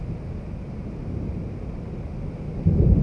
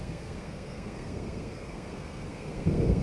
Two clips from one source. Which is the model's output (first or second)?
second